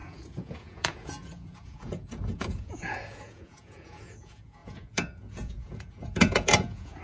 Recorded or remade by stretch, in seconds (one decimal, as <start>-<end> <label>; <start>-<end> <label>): 0.0-7.0 remade